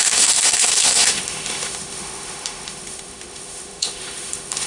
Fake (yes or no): yes